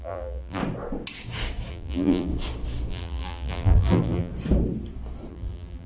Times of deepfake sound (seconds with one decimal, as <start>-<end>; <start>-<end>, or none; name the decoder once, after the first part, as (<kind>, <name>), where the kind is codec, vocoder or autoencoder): 0.0-0.6 (vocoder, BigVGAN v2); 1.7-2.3; 2.9-4.3; 5.3-5.9

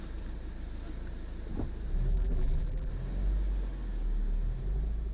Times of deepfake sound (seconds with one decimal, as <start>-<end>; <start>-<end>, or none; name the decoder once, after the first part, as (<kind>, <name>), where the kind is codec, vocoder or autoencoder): 2.1-2.9 (vocoder, BigVGAN v2)